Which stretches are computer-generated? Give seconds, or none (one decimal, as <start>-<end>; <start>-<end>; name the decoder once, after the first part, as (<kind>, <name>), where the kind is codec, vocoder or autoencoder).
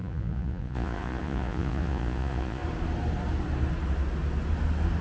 0.0-2.6 (vocoder, Vocos)